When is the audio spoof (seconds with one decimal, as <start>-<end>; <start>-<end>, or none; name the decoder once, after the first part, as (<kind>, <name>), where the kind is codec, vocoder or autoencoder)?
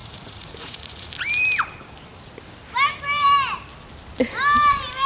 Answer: 0.0-1.1 (vocoder, Vocos)